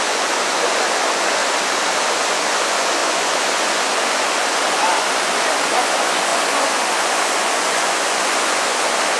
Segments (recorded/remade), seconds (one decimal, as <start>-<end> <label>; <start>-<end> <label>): 0.0-1.4 remade; 1.4-2.1 recorded; 2.1-9.2 remade

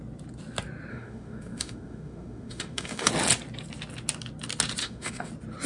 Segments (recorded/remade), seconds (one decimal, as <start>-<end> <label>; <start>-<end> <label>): 0.0-0.9 recorded; 0.9-3.1 remade; 3.1-4.8 recorded; 4.8-5.3 remade; 5.3-5.7 recorded

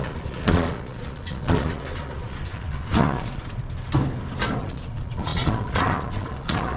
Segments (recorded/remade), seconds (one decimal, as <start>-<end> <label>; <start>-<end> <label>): 0.0-3.6 remade; 3.6-4.6 recorded; 4.6-6.8 remade

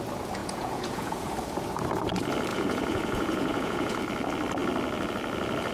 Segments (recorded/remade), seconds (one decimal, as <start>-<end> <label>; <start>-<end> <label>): 0.0-0.4 recorded; 0.4-1.3 remade; 1.3-2.5 recorded; 2.5-4.0 remade; 4.0-5.7 recorded